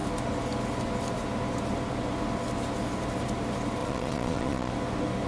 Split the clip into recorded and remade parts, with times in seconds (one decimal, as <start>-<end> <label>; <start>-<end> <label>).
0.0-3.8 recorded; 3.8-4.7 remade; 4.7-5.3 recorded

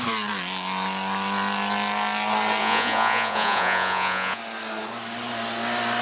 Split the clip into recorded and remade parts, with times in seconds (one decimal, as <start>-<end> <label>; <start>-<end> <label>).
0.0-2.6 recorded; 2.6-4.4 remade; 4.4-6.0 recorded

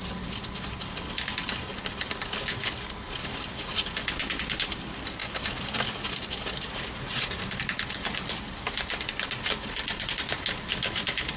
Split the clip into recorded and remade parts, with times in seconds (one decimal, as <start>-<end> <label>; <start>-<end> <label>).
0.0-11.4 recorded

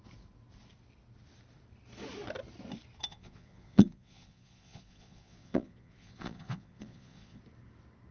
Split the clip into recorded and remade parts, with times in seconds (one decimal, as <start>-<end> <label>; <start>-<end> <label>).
0.0-3.1 recorded; 3.1-7.4 remade; 7.4-8.1 recorded

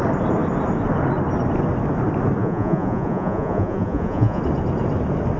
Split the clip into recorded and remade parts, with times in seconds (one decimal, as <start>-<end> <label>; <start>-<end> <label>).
0.0-2.4 recorded; 2.4-4.4 remade; 4.4-5.4 recorded

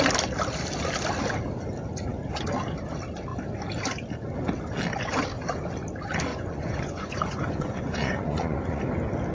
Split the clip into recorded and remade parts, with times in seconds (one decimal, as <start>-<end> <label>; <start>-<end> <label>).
0.0-6.3 recorded; 6.3-8.8 remade; 8.8-9.3 recorded

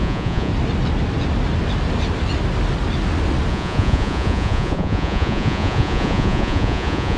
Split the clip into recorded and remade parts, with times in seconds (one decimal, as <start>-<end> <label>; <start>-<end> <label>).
0.0-0.5 remade; 0.5-3.5 recorded; 3.5-7.2 remade

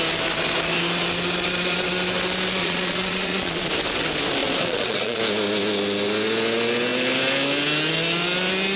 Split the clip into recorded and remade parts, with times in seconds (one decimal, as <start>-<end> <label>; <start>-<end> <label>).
0.0-2.6 recorded; 2.6-3.7 remade; 3.7-4.4 recorded; 4.4-5.2 remade; 5.2-8.8 recorded